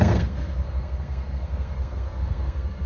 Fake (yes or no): yes